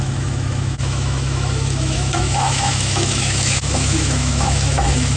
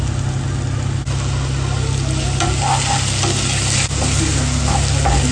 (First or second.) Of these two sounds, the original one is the second